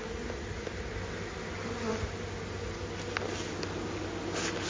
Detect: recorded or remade recorded